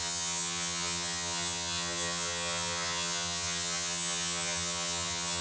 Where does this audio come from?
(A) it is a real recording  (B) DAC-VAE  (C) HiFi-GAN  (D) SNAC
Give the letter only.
C